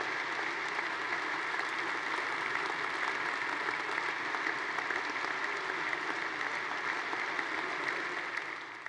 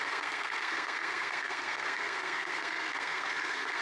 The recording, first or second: first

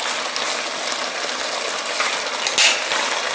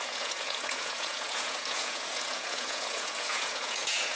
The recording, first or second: first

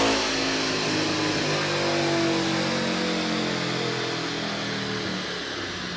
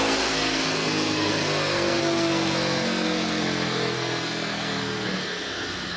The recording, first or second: first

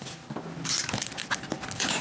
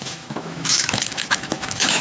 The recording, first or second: first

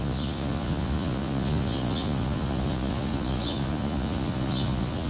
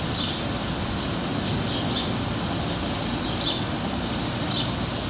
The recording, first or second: second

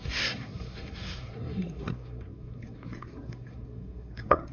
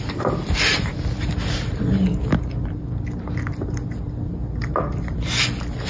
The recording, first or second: second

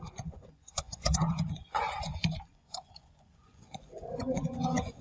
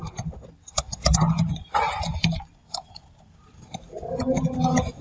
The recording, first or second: second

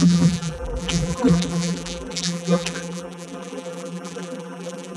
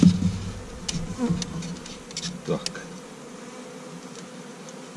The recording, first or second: second